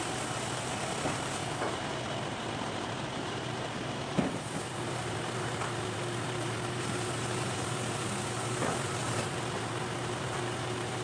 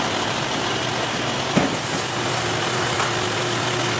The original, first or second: second